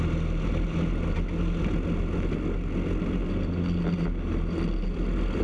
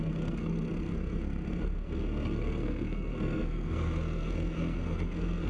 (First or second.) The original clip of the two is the first